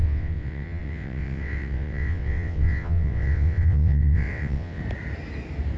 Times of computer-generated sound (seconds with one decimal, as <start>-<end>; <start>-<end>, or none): 0.0-4.8